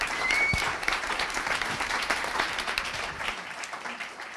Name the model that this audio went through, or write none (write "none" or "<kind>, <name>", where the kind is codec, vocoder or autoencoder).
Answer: vocoder, BigVGAN v2